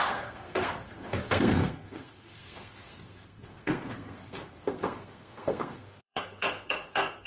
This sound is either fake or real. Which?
fake